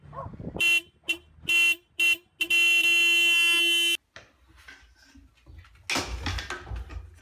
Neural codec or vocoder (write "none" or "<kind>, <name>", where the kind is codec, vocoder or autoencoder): none